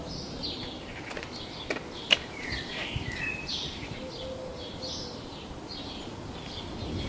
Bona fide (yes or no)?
yes